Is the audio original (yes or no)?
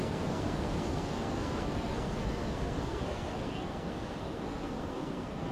no